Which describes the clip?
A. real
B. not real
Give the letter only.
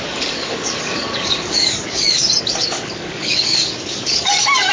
B